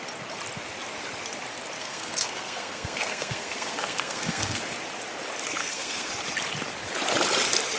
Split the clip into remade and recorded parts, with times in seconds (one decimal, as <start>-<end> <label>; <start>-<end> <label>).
0.0-1.8 recorded; 1.8-4.6 remade; 4.6-5.6 recorded; 5.6-6.1 remade; 6.1-7.8 recorded